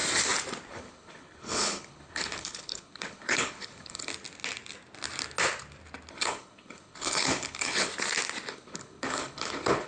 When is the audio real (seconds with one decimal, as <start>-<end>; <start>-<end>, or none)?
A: 0.0-0.7; 4.1-6.1; 7.9-8.5